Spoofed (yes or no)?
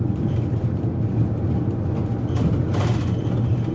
no